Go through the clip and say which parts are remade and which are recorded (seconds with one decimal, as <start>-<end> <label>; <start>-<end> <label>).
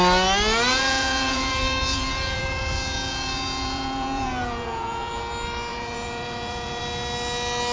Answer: 0.0-0.7 recorded; 0.7-5.2 remade; 5.2-5.7 recorded; 5.7-6.8 remade; 6.8-7.7 recorded